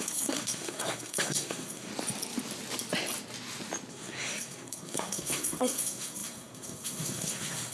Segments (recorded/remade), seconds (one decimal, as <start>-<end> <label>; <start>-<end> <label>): 0.0-1.9 remade; 1.9-3.9 recorded; 3.9-7.7 remade